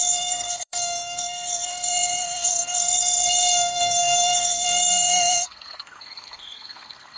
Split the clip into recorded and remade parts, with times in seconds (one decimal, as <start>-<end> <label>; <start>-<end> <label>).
0.0-7.2 remade